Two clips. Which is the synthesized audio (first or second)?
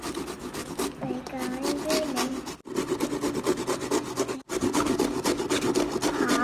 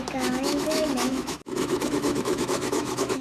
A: second